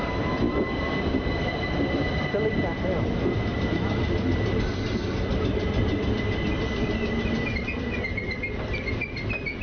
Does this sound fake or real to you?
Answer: real